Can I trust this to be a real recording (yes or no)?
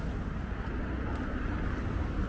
yes